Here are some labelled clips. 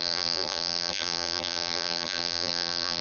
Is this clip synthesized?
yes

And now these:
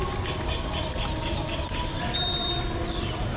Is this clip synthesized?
yes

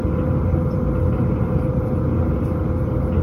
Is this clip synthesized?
no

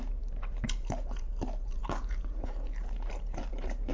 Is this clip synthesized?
yes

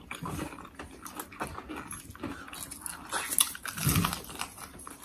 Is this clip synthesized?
no